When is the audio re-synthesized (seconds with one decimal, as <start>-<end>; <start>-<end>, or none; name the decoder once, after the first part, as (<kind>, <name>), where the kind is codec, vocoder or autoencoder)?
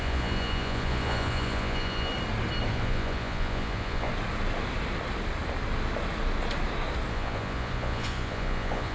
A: 0.0-2.1 (vocoder, Vocos); 2.7-4.1; 7.1-8.9